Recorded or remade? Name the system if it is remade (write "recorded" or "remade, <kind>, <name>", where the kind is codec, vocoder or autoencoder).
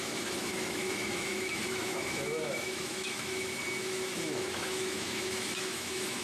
remade, autoencoder, DAC-VAE